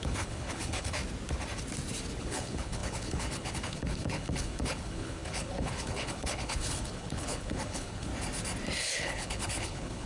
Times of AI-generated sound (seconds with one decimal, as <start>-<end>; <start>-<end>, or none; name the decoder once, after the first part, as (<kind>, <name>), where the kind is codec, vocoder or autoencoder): 0.0-1.0 (codec, HILCodec); 2.2-8.1; 8.8-10.1